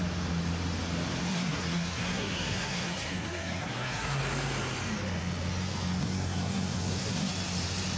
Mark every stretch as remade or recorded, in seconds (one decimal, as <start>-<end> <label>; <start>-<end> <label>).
0.0-1.3 recorded; 1.3-4.2 remade; 4.2-6.0 recorded; 6.0-7.3 remade; 7.3-8.0 recorded